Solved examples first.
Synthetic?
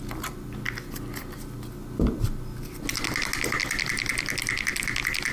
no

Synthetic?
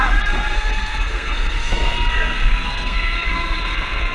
yes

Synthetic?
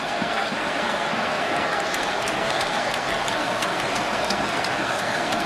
yes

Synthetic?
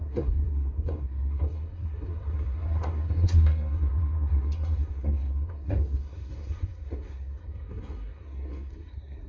yes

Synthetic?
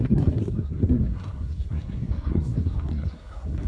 yes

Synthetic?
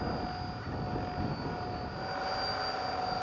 no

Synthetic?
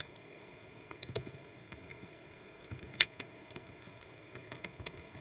yes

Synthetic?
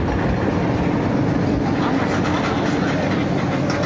no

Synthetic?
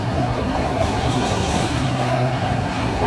yes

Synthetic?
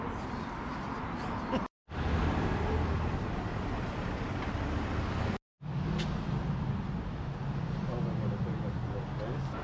no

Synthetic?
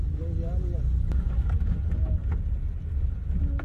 no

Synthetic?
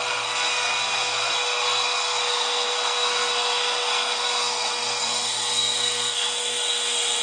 yes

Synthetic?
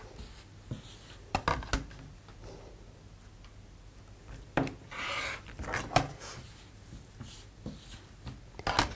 no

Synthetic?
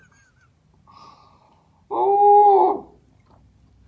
no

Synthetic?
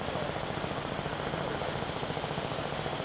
no